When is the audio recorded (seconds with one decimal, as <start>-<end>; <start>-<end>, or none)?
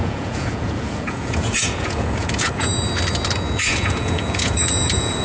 2.7-3.6